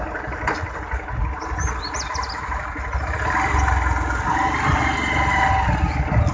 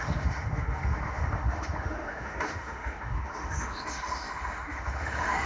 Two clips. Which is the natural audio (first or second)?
first